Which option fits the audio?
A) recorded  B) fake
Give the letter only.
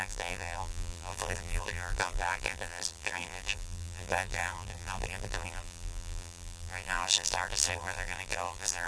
B